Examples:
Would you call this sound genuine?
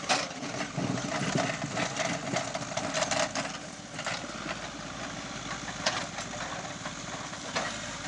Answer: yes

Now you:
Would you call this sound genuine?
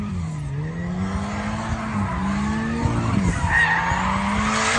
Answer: yes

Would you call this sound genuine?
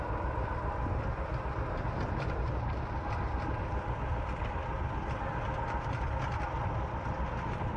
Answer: yes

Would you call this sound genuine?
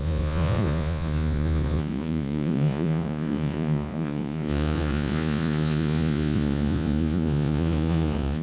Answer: no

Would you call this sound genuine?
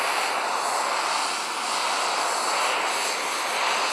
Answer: yes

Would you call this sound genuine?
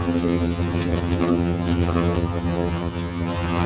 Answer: no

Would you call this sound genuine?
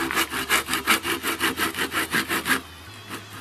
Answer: yes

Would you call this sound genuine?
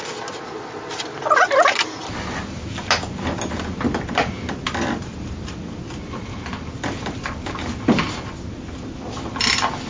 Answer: yes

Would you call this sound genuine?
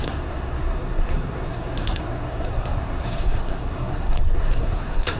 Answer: no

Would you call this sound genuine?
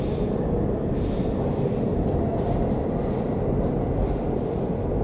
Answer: yes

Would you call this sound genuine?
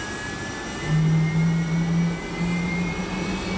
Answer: yes